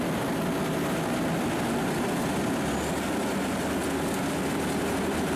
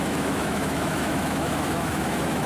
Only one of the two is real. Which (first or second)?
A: first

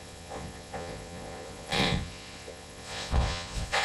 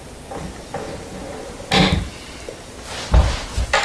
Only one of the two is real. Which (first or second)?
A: second